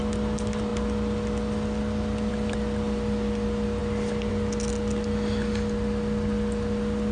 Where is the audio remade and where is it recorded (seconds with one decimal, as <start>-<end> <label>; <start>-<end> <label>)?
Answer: 0.0-7.1 recorded